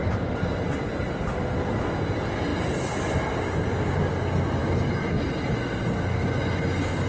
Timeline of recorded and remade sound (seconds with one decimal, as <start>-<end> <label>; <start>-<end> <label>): 0.0-7.1 recorded